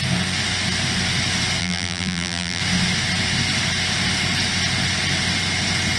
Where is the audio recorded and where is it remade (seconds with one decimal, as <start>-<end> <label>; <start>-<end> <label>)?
0.0-1.6 recorded; 1.6-2.6 remade; 2.6-6.0 recorded